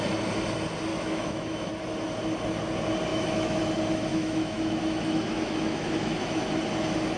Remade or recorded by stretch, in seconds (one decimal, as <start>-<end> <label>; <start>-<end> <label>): 0.0-0.9 recorded; 0.9-1.7 remade; 1.7-3.1 recorded; 3.1-3.6 remade; 3.6-4.1 recorded; 4.1-6.4 remade; 6.4-7.2 recorded